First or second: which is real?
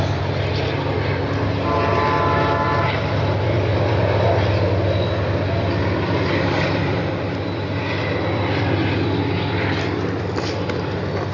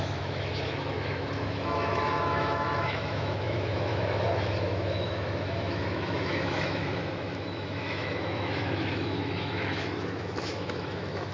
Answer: first